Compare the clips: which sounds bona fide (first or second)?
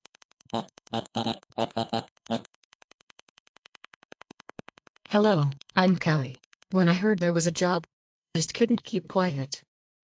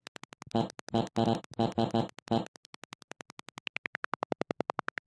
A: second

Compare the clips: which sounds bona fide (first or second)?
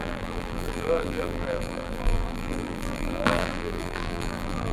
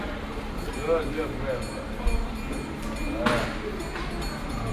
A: second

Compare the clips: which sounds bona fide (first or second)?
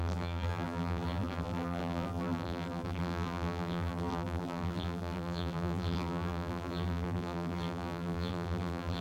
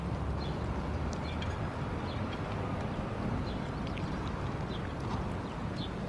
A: second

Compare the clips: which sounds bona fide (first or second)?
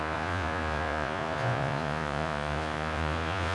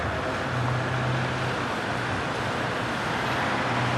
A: second